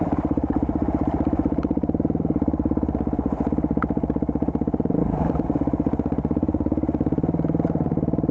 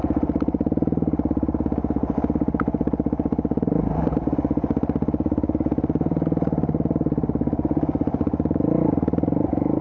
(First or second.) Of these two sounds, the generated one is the first